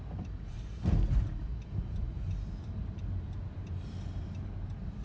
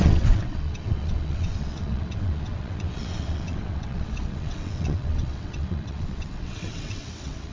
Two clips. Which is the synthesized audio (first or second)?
second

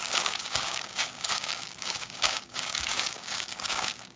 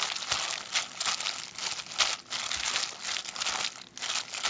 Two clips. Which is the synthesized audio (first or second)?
first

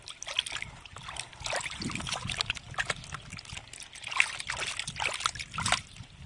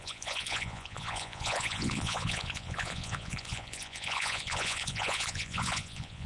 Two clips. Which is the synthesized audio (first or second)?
second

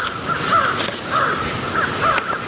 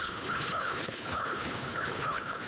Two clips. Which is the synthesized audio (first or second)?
second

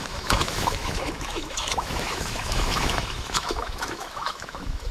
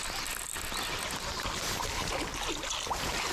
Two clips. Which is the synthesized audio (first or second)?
first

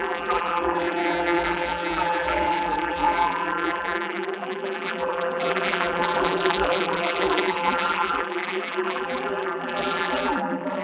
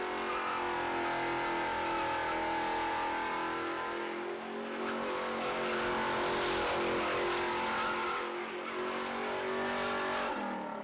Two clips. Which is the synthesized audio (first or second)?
first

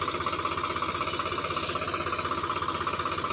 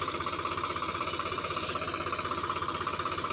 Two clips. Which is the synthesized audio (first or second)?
second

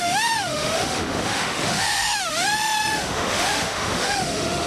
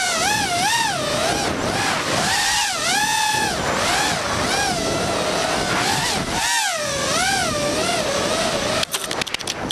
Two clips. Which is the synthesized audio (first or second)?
first